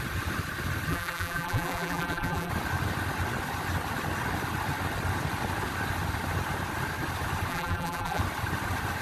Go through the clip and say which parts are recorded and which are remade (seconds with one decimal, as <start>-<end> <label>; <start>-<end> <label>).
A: 0.0-0.9 recorded; 0.9-2.5 remade; 2.5-7.5 recorded; 7.5-8.2 remade; 8.2-9.0 recorded